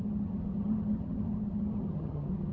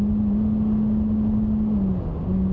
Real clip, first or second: second